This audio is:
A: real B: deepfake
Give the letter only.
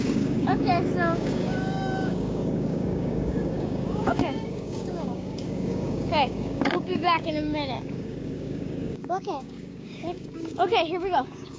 B